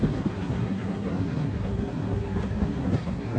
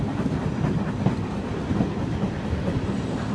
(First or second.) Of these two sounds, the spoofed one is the first